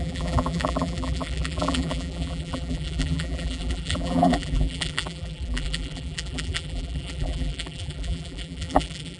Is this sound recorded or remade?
remade